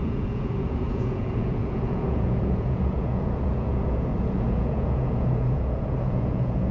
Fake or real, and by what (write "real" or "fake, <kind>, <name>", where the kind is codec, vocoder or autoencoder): fake, vocoder, Vocos